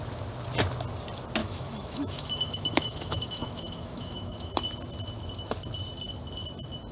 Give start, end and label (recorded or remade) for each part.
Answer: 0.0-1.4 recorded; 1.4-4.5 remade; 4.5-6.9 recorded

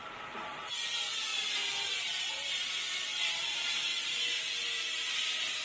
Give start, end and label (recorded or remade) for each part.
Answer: 0.0-0.7 remade; 0.7-5.6 recorded

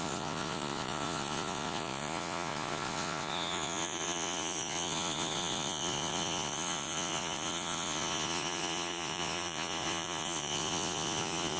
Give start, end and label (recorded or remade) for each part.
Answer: 0.0-11.6 remade

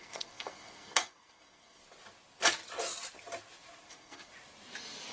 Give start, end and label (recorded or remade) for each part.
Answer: 0.0-1.8 remade; 1.8-3.9 recorded; 3.9-4.3 remade; 4.3-5.1 recorded

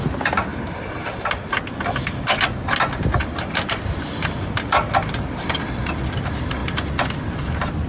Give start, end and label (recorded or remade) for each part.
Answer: 0.0-0.5 remade; 0.5-5.2 recorded; 5.2-7.9 remade

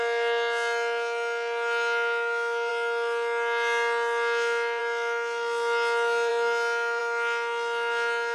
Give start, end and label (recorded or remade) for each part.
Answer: 0.0-8.3 recorded

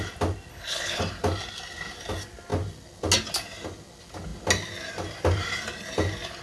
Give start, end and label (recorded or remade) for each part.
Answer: 0.0-0.5 recorded; 0.5-1.0 remade; 1.0-6.4 recorded

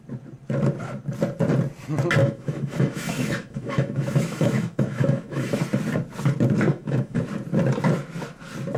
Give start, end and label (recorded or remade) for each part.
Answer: 0.0-2.2 recorded; 2.2-5.6 remade; 5.6-6.7 recorded; 6.7-7.2 remade; 7.2-8.8 recorded